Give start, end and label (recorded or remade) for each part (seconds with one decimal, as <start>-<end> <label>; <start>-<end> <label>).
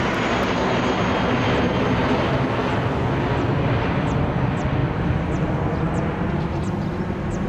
0.0-7.5 recorded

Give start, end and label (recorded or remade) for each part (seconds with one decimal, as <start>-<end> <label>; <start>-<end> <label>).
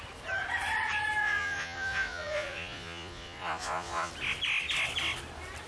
0.0-1.2 recorded; 1.2-4.1 remade; 4.1-5.7 recorded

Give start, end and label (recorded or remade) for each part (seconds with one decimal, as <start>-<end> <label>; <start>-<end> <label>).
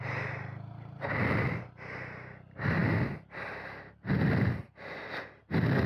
0.0-5.9 recorded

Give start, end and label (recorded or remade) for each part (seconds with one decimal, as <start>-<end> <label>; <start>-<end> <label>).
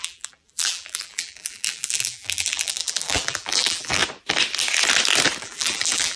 0.0-4.0 remade; 4.0-5.4 recorded; 5.4-6.2 remade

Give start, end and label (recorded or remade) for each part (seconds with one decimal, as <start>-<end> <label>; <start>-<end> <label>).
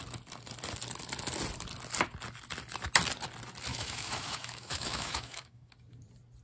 0.0-3.7 recorded; 3.7-5.7 remade; 5.7-6.4 recorded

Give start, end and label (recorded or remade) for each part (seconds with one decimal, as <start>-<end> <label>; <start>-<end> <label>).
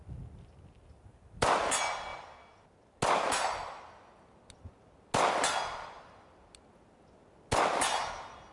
0.0-8.5 recorded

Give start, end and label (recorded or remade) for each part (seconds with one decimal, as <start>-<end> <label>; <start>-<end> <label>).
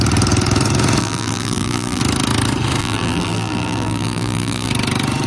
0.0-1.0 recorded; 1.0-2.0 remade; 2.0-2.8 recorded; 2.8-4.7 remade; 4.7-5.3 recorded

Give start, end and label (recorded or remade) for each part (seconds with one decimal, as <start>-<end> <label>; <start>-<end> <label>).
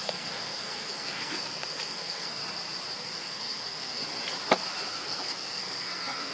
0.0-2.4 remade; 2.4-3.0 recorded; 3.0-4.0 remade; 4.0-4.9 recorded; 4.9-6.3 remade